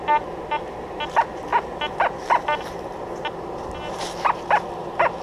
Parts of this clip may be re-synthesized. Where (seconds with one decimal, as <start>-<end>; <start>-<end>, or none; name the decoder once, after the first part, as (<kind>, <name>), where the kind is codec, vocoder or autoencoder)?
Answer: none